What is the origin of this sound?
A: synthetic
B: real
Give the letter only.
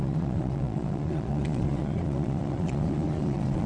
A